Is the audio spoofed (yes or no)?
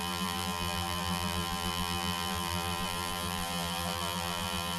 yes